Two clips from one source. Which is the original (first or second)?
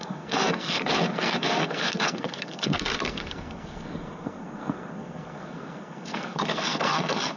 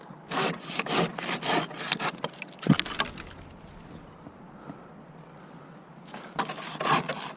second